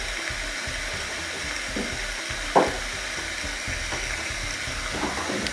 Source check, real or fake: real